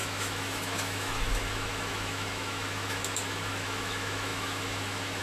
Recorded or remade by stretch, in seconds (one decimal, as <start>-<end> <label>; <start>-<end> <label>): 0.0-5.2 remade